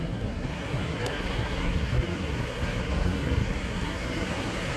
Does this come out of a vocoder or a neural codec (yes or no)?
yes